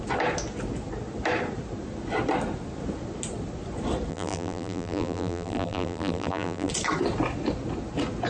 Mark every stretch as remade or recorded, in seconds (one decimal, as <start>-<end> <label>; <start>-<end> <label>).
0.0-4.1 recorded; 4.1-6.7 remade; 6.7-8.3 recorded